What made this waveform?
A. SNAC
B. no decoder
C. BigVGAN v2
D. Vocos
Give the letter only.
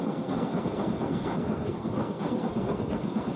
A